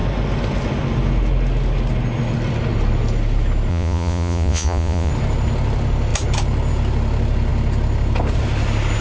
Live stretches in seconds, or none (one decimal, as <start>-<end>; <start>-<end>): 0.0-3.7; 5.1-9.0